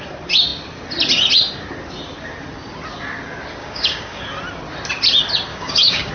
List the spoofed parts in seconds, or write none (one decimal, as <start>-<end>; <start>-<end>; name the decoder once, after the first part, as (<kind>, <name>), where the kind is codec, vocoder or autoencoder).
3.6-4.2 (codec, DAC); 5.5-6.1